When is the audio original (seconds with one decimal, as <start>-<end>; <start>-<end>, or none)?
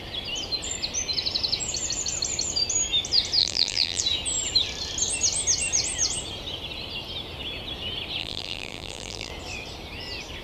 0.0-3.4; 4.0-8.2; 9.3-10.4